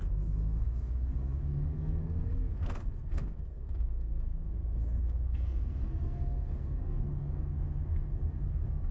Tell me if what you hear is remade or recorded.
remade